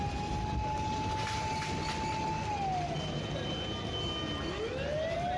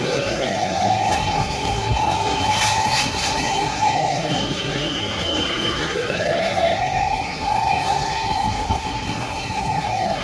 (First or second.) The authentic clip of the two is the first